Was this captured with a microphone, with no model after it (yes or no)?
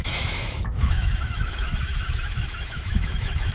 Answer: no